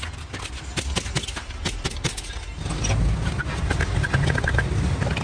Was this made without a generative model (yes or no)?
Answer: yes